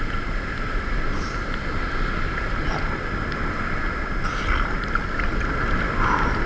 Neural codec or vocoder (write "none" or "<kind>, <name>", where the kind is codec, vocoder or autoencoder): none